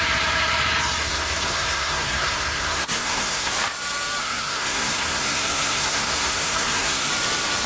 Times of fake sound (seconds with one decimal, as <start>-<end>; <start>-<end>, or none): 1.0-3.5; 4.2-7.1